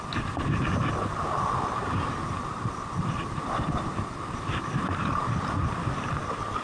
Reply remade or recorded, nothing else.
recorded